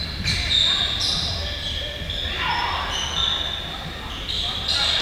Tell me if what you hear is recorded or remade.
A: recorded